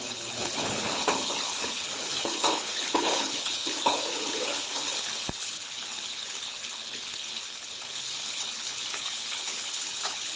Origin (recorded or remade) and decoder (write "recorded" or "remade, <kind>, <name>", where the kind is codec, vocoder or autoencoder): remade, codec, HILCodec